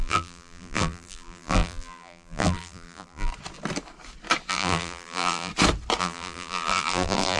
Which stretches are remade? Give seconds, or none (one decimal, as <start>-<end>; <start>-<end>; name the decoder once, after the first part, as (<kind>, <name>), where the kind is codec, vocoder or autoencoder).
0.0-3.3 (vocoder, BigVGAN v2); 4.5-5.5; 6.0-7.4